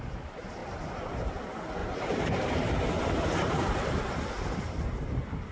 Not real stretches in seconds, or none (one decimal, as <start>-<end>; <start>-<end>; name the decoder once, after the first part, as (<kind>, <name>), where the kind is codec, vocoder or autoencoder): 0.6-1.4 (vocoder, BigVGAN v2); 1.8-2.9; 3.4-4.0

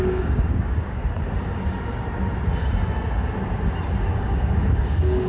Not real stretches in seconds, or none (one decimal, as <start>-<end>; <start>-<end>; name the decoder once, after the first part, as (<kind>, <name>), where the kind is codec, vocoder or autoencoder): 0.0-1.0 (codec, DAC); 4.1-5.3

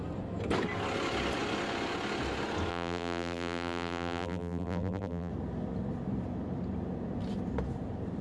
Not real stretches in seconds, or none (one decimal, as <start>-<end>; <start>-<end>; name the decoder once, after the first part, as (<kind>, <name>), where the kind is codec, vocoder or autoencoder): 2.7-5.3 (vocoder, BigVGAN v2)

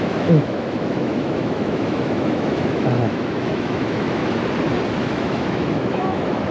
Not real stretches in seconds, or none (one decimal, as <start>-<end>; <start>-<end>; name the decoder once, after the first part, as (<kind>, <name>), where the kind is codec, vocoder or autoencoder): 0.0-4.2 (autoencoder, DAC-VAE); 5.0-6.5

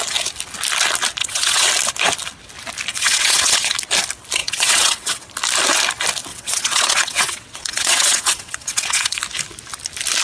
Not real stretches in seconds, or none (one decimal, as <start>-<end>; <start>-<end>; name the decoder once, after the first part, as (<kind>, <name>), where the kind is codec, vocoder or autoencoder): 1.2-1.7 (vocoder, WaveNeXt); 2.9-3.7; 4.4-5.3; 6.3-9.2

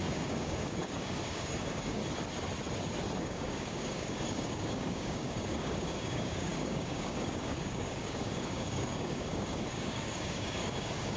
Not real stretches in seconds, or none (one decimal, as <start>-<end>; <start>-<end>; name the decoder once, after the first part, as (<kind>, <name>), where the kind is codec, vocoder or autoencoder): 0.0-2.0 (codec, DAC); 3.2-11.2

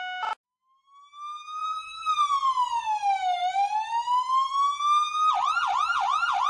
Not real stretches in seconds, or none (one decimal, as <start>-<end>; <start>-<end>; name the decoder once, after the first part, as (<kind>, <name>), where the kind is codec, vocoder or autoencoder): 1.6-2.8 (vocoder, BigVGAN v2)

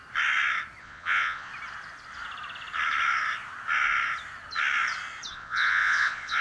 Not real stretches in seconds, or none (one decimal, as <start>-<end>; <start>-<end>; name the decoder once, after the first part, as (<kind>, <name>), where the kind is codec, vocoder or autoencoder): 0.8-1.5 (vocoder, Vocos); 5.3-6.4